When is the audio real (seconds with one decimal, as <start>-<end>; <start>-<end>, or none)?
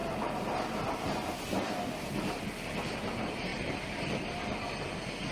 0.0-5.3